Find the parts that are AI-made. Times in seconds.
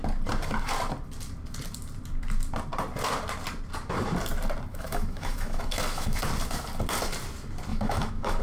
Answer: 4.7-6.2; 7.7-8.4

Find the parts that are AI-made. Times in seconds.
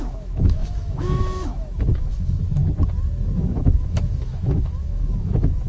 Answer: 0.0-2.4; 3.3-5.7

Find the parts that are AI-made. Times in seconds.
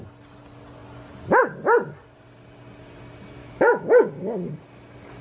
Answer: 3.4-4.1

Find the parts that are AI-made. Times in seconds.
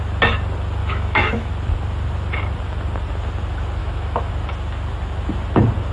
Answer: 0.8-1.5; 3.8-4.3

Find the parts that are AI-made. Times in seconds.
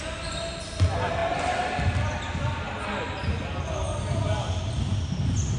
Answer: none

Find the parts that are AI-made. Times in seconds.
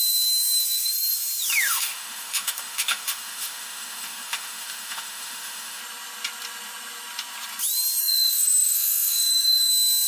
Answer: 1.7-5.8; 8.0-9.7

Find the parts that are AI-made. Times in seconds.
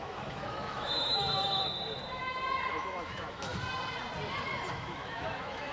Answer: 0.0-1.6; 2.7-3.5; 4.7-5.7